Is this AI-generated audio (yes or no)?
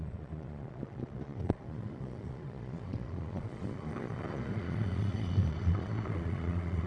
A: yes